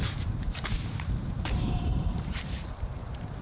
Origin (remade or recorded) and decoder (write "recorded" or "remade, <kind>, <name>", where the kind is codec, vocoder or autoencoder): remade, vocoder, BigVGAN v2